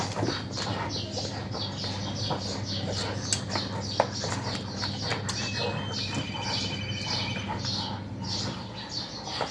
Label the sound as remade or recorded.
recorded